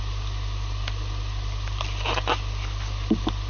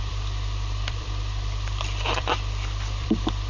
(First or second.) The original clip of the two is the first